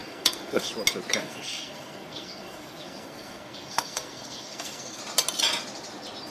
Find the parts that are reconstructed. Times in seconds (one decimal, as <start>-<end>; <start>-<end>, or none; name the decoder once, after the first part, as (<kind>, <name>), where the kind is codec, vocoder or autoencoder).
0.0-0.7 (codec, SNAC); 1.2-5.0